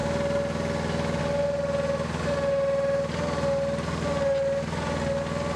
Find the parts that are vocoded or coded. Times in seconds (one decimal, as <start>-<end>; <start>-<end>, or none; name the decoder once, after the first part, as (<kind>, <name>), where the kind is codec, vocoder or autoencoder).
none